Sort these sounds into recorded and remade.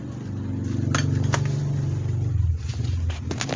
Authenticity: recorded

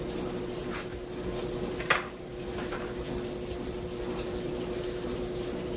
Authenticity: recorded